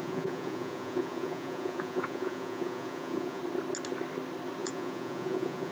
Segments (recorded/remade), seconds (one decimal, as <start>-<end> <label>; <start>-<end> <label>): 0.0-3.4 remade; 3.4-4.6 recorded; 4.6-5.7 remade